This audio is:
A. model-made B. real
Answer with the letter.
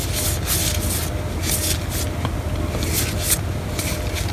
B